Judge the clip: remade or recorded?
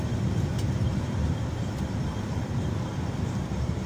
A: recorded